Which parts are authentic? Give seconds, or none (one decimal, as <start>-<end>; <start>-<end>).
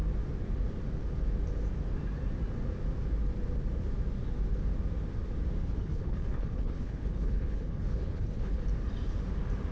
0.0-5.6; 8.6-9.7